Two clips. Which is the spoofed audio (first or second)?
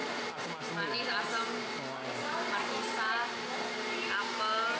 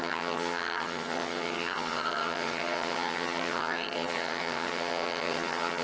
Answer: second